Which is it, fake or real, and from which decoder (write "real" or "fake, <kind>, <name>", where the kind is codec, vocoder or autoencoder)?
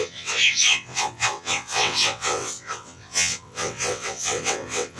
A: fake, vocoder, WaveNeXt